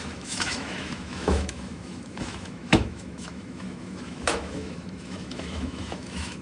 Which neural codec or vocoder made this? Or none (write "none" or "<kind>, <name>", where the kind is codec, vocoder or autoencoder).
autoencoder, DAC-VAE